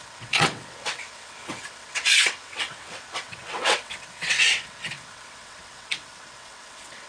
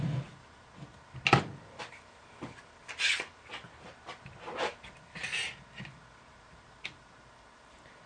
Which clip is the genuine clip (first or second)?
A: second